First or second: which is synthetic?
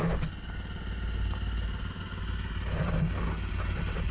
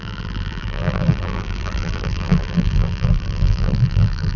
second